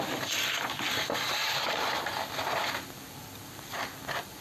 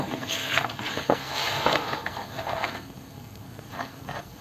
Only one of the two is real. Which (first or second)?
first